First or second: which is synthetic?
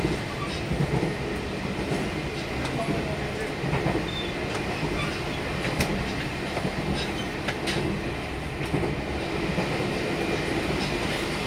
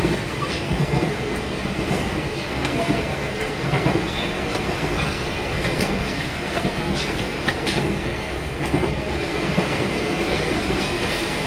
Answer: second